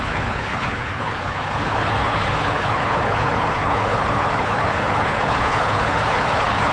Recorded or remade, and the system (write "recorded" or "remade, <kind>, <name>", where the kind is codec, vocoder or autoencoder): remade, codec, HILCodec